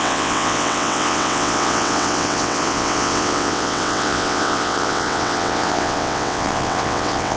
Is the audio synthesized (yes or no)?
yes